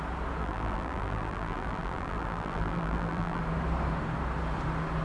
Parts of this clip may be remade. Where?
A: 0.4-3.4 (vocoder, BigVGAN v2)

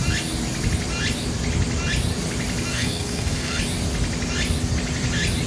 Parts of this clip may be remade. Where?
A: 2.7-3.6 (codec, SNAC)

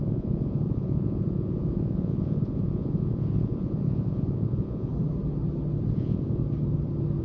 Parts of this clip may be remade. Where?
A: 0.0-4.9 (vocoder, Vocos); 5.9-6.4

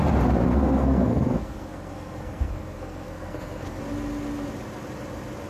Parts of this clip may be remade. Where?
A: 0.5-3.8 (codec, SNAC)

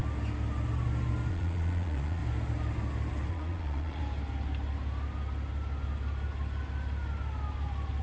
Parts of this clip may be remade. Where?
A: 1.3-2.2 (vocoder, Vocos); 3.3-4.0

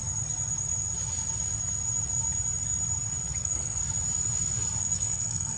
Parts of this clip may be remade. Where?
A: 3.4-3.8 (codec, SNAC); 4.8-5.6

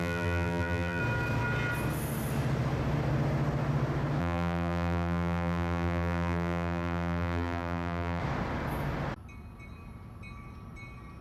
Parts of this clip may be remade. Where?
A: 0.0-1.0 (vocoder, BigVGAN v2); 4.2-8.2